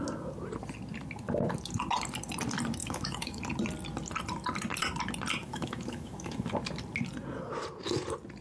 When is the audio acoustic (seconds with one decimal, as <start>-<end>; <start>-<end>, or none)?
0.0-2.8; 3.4-5.4; 6.5-8.4